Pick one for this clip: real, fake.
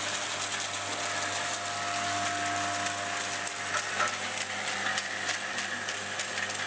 real